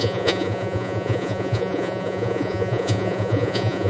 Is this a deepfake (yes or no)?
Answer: yes